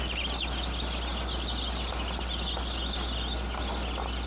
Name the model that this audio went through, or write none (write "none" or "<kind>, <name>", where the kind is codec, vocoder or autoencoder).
none